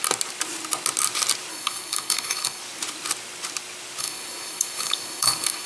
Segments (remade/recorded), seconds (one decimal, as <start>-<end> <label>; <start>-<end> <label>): 0.0-1.5 recorded; 1.5-2.6 remade; 2.6-4.0 recorded; 4.0-5.7 remade

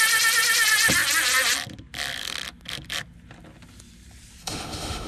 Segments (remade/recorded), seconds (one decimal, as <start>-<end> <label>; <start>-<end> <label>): 0.0-4.4 recorded; 4.4-5.1 remade

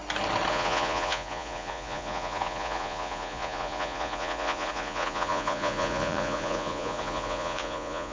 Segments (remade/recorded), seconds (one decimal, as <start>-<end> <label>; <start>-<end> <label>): 0.0-0.5 recorded; 0.5-8.1 remade

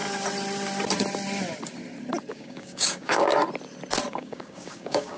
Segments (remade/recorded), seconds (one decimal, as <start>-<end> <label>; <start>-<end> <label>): 0.0-2.3 recorded; 2.3-3.3 remade; 3.3-4.1 recorded; 4.1-5.2 remade

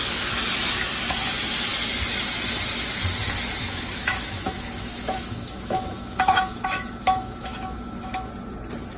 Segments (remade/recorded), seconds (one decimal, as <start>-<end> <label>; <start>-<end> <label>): 0.0-3.6 recorded; 3.6-8.3 remade; 8.3-9.0 recorded

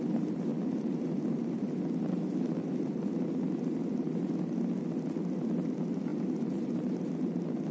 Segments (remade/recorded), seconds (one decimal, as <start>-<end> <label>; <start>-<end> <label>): 0.0-7.7 recorded

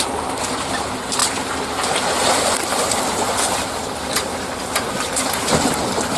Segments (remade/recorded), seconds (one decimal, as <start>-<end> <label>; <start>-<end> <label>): 0.0-6.2 recorded

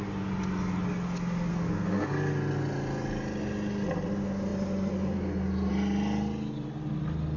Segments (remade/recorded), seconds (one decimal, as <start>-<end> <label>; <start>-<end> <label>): 0.0-1.5 recorded; 1.5-2.1 remade; 2.1-7.4 recorded